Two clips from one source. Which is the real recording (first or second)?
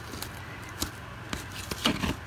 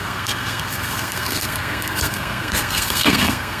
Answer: first